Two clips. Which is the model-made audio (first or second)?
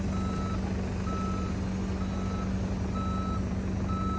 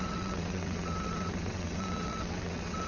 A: second